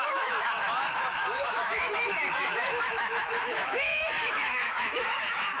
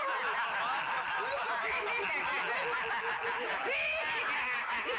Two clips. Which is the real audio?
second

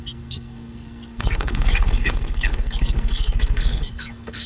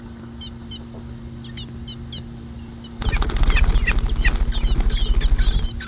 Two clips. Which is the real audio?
second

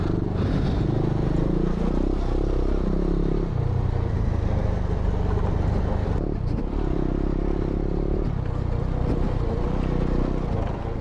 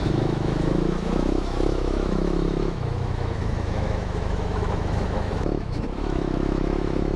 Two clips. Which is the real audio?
first